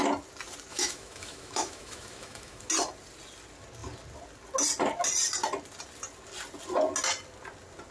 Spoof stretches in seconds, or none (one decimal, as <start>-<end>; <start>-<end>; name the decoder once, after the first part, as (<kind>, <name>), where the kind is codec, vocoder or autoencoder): 0.7-2.7 (autoencoder, DAC-VAE)